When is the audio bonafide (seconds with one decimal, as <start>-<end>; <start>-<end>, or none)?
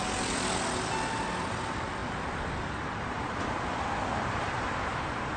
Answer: 0.0-5.4